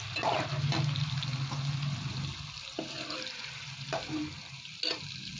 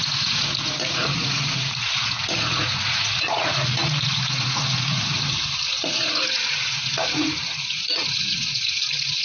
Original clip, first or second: first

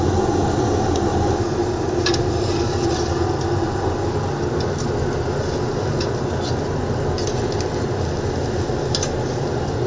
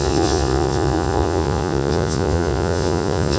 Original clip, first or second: first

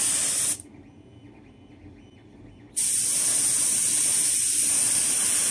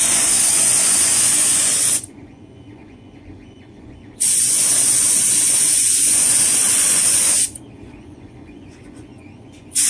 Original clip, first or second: first